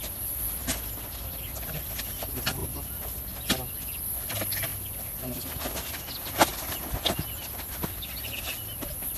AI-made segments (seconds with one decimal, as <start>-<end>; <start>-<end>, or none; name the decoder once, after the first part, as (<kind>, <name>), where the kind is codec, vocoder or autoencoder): none